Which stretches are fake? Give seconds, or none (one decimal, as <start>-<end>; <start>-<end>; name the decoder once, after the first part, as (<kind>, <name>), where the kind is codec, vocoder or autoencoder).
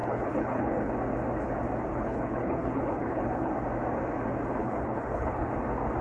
0.0-0.9 (codec, HILCodec); 1.9-3.5; 4.6-5.5